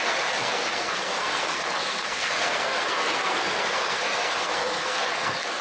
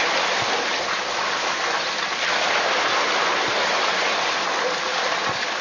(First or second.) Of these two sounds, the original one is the second